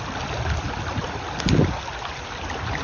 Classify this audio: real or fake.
real